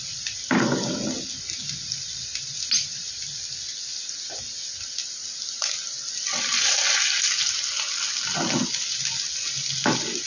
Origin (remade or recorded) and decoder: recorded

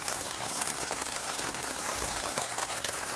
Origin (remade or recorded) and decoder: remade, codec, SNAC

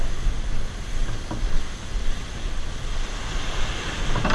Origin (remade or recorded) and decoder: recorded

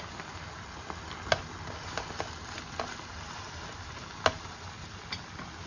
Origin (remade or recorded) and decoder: recorded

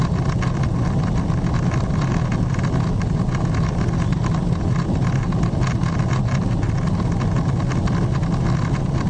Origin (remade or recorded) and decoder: recorded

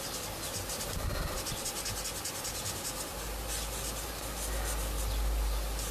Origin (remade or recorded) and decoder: recorded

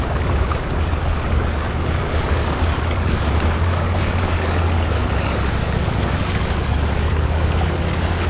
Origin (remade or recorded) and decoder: remade, codec, DAC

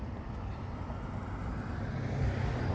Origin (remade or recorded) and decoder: recorded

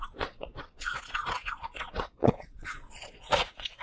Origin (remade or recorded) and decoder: remade, vocoder, Vocos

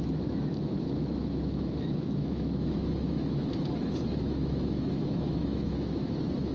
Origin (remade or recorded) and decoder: remade, autoencoder, DAC-VAE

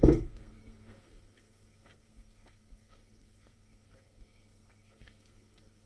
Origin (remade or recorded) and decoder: remade, codec, SNAC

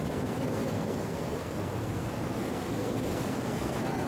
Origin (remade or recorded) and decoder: remade, codec, SNAC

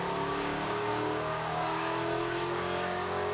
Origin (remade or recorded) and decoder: remade, codec, DAC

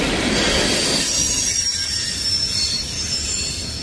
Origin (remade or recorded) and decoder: recorded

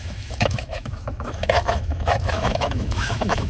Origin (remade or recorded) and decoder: remade, autoencoder, DAC-VAE